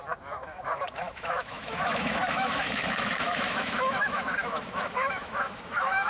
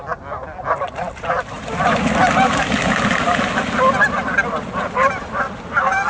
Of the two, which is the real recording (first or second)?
second